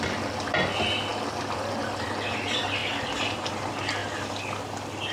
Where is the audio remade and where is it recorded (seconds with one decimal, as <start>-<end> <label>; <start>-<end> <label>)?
0.0-4.0 recorded; 4.0-4.6 remade; 4.6-5.1 recorded